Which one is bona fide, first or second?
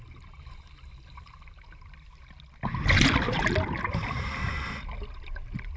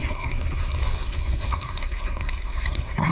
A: first